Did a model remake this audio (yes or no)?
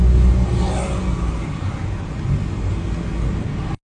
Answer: no